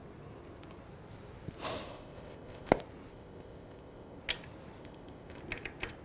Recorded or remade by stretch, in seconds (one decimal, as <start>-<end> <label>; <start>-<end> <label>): 0.0-1.9 recorded; 1.9-2.7 remade; 2.7-3.1 recorded; 3.1-4.2 remade; 4.2-4.8 recorded; 4.8-5.4 remade; 5.4-6.0 recorded